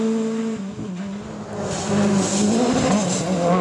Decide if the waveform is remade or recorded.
recorded